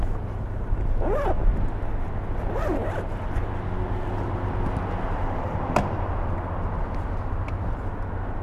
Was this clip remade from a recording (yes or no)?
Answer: no